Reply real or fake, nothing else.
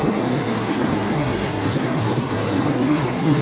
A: fake